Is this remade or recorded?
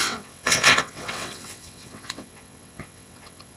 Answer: remade